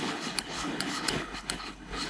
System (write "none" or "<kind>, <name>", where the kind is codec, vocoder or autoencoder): codec, HILCodec